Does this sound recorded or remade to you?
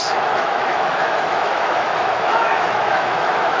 remade